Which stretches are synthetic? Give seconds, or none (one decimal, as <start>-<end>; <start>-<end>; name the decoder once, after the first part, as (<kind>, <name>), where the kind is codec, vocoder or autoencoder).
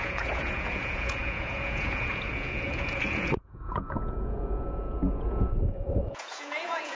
0.0-6.9 (vocoder, Vocos)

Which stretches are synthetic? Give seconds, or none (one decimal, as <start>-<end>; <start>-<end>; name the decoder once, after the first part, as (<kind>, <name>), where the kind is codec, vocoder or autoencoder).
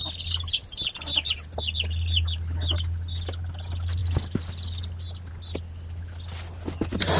none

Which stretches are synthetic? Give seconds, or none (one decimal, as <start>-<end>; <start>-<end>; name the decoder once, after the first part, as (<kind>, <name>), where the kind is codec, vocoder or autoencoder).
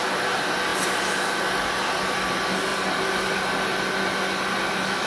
none